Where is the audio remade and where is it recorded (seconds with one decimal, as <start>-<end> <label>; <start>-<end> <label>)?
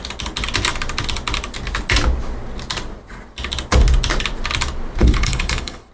0.0-5.0 recorded; 5.0-5.9 remade